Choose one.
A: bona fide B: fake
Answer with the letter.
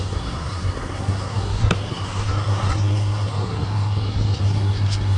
B